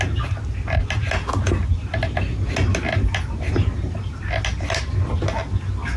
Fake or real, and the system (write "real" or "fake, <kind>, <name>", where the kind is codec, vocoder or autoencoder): real